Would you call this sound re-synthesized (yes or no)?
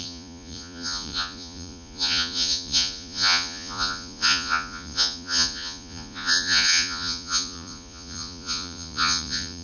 yes